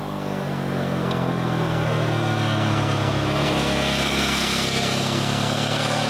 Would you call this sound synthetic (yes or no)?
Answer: yes